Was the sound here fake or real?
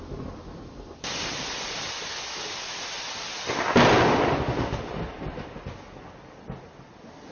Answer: real